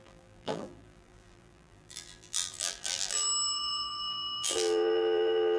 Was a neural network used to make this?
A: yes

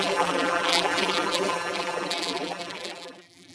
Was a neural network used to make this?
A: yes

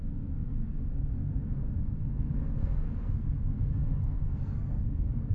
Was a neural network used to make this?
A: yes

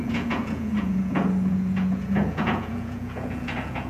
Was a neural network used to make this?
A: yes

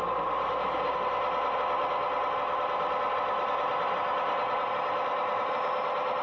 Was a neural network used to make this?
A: no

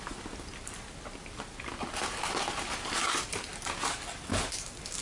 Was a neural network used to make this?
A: no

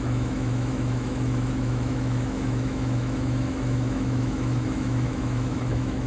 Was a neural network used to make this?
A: yes